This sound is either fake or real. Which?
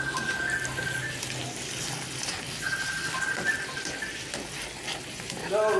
real